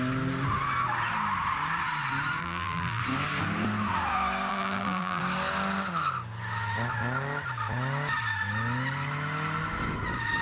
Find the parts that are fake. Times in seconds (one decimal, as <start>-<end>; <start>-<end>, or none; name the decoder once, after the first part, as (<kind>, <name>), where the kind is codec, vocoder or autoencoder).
2.4-3.0 (vocoder, BigVGAN v2); 4.5-5.2